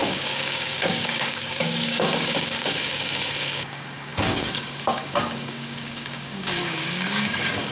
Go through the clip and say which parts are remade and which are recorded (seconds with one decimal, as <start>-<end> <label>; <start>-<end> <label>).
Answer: 0.0-7.7 remade